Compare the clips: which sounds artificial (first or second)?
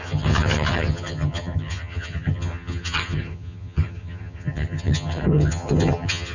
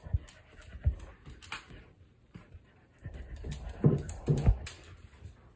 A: first